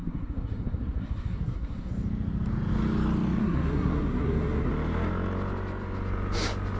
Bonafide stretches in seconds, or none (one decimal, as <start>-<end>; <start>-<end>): 1.9-3.4; 4.7-6.8